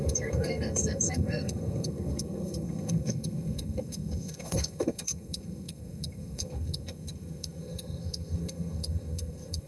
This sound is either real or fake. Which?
fake